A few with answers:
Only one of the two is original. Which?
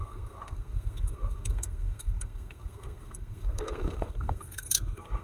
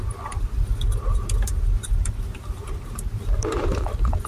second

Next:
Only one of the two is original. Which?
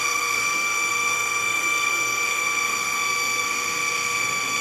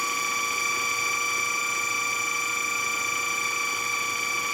second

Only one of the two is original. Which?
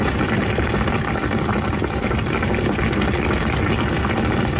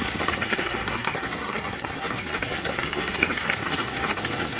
first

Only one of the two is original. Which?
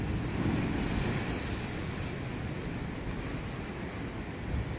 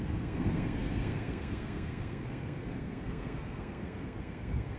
first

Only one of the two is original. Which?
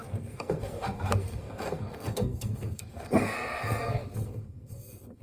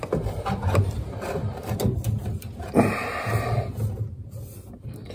second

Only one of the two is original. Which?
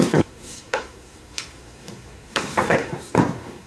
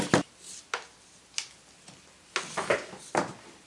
second